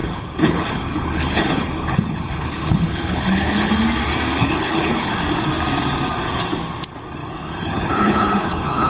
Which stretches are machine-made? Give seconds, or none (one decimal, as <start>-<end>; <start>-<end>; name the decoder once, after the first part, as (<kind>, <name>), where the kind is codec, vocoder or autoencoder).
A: 0.0-3.7 (codec, HILCodec); 4.4-5.1; 7.2-8.9